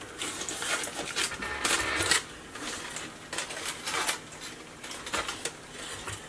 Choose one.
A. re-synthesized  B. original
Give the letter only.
B